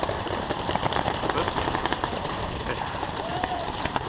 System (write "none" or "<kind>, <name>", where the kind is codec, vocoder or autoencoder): vocoder, BigVGAN v2